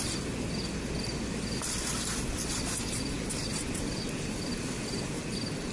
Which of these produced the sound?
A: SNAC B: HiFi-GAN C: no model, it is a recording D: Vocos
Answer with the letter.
C